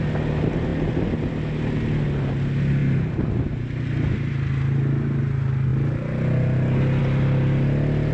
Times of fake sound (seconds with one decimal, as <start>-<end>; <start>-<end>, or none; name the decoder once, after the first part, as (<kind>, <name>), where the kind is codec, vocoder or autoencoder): none

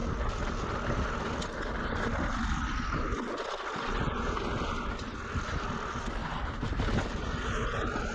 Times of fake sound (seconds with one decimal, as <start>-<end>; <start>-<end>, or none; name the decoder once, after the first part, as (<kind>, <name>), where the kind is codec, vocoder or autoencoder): 6.2-6.9 (vocoder, BigVGAN v2)

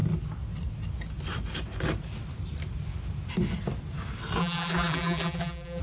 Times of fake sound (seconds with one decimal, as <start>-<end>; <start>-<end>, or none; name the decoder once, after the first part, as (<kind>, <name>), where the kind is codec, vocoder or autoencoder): 4.4-5.8 (vocoder, BigVGAN v2)

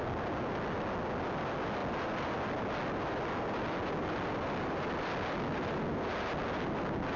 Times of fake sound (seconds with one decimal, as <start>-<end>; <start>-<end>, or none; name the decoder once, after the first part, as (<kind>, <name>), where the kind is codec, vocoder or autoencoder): none

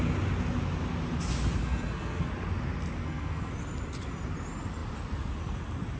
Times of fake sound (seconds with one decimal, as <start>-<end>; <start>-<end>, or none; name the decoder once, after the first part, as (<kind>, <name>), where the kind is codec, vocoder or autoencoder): 1.6-2.3 (codec, SNAC); 3.0-3.5

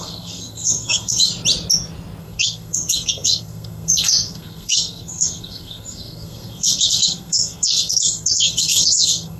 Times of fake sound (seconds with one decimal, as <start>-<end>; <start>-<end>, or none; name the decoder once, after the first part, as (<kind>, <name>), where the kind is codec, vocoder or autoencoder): 0.0-1.3 (codec, SNAC); 2.2-9.4